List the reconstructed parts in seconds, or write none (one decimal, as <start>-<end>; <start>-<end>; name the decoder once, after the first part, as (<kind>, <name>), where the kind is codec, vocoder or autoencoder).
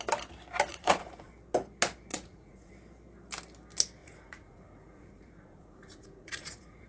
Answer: 0.7-1.3 (vocoder, Vocos); 2.1-2.7; 4.0-6.9